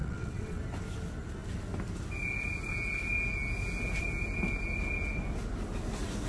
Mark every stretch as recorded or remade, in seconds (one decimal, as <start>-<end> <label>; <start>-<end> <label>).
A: 0.0-0.6 remade; 0.6-6.3 recorded

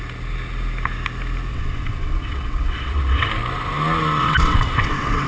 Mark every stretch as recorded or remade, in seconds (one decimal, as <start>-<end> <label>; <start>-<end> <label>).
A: 0.0-1.5 recorded; 1.5-3.3 remade; 3.3-4.2 recorded; 4.2-5.3 remade